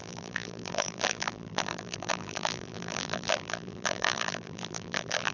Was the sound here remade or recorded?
remade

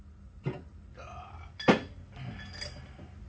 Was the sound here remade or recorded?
recorded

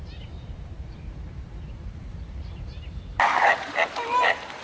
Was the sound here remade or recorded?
remade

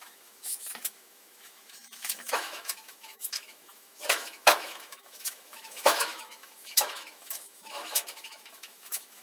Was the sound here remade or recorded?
remade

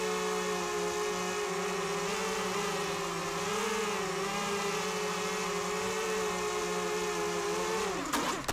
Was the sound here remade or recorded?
recorded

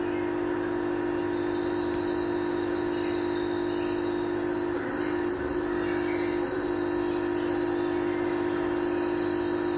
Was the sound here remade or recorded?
recorded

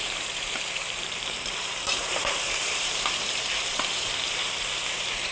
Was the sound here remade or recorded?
remade